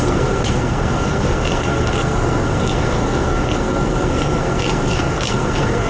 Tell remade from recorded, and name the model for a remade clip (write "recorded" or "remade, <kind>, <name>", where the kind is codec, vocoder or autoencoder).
remade, codec, SNAC